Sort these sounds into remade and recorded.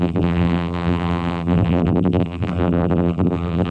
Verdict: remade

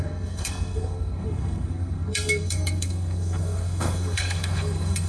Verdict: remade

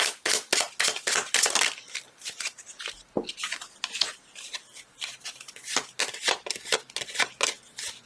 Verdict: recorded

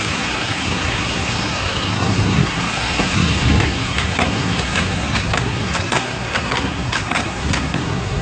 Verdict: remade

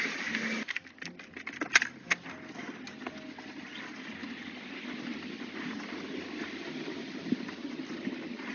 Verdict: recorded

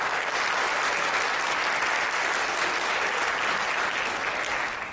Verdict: recorded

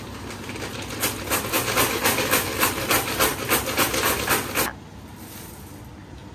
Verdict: recorded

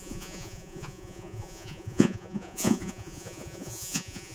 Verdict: remade